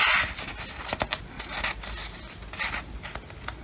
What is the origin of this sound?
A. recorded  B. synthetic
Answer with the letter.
A